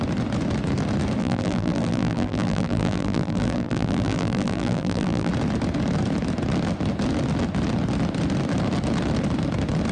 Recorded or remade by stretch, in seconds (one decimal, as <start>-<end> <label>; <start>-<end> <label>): 0.0-1.2 recorded; 1.2-5.3 remade; 5.3-9.9 recorded